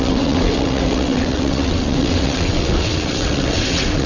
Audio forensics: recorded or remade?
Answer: remade